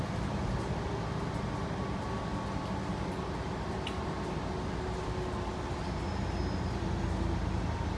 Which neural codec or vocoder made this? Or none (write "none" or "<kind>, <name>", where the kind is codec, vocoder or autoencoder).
none